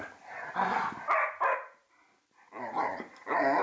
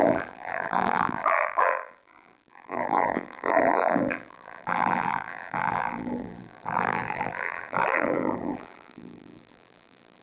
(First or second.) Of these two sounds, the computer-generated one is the second